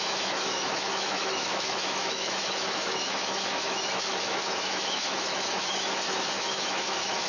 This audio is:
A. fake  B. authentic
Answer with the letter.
A